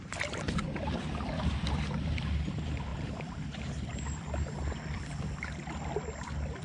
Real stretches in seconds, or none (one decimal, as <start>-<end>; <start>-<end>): none